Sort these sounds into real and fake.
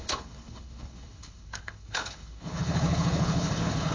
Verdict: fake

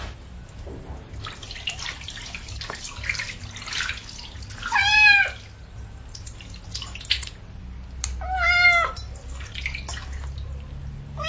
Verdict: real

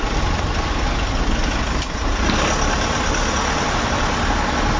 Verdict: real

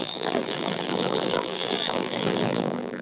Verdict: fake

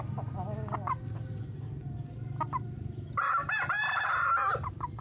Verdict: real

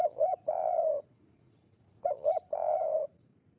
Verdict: fake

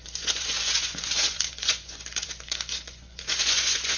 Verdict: fake